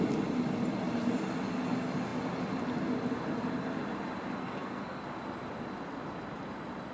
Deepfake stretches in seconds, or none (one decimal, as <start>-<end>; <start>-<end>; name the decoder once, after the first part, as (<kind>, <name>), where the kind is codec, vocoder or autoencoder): 4.4-5.0 (codec, SNAC)